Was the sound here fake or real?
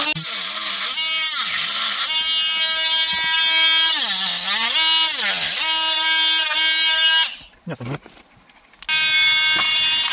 real